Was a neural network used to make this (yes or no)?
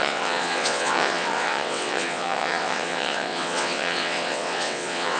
yes